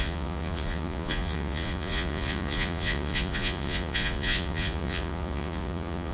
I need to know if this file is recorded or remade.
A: remade